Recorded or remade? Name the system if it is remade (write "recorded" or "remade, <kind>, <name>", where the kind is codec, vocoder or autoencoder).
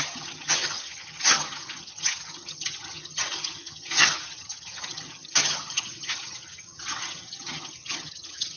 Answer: remade, vocoder, HiFi-GAN